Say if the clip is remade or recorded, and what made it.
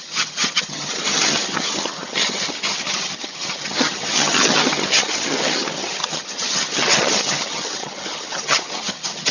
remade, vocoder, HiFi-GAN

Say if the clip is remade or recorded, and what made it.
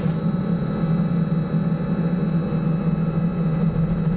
recorded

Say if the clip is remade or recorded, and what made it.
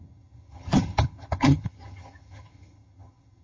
remade, vocoder, HiFi-GAN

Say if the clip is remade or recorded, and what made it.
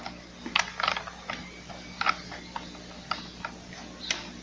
recorded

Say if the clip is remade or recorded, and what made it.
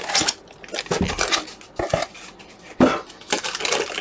recorded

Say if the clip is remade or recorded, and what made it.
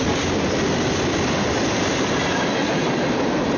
recorded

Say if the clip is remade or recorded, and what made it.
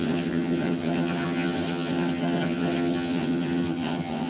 remade, vocoder, HiFi-GAN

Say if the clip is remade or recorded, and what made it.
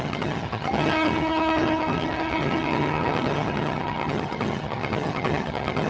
remade, vocoder, HiFi-GAN